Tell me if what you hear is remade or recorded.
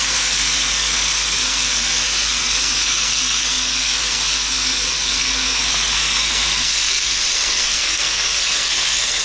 remade